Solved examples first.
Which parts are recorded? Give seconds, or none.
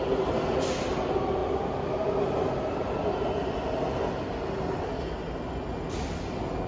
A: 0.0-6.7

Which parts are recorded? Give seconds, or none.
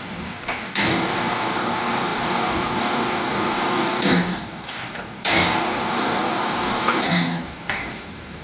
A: none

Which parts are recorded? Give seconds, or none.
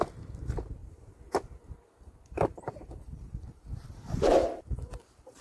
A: 0.0-0.8; 3.7-4.4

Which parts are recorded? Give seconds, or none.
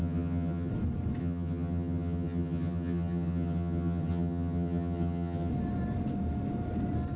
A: 0.7-1.2; 5.5-7.2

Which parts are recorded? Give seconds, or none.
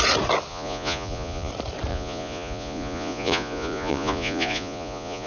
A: 0.0-0.5; 1.5-1.9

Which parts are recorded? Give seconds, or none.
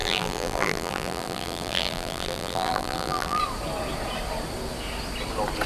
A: 3.4-5.7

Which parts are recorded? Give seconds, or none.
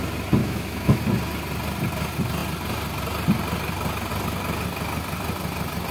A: 0.0-0.4; 1.0-5.9